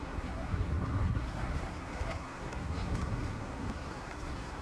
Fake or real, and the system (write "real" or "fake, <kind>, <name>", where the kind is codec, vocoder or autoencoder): fake, codec, SNAC